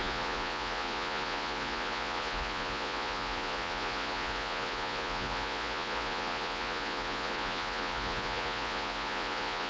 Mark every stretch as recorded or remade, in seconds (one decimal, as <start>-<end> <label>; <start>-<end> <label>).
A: 0.0-9.7 remade